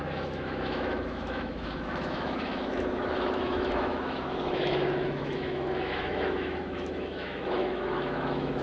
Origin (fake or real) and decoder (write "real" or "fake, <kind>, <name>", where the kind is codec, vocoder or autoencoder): fake, autoencoder, DAC-VAE